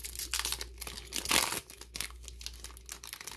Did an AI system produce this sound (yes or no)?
no